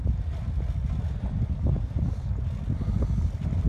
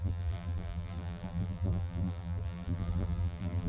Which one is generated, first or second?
second